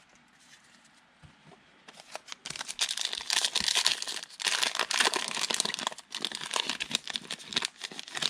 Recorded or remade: recorded